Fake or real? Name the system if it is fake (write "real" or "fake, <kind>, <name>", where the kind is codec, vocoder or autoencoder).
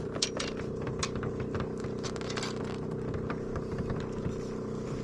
real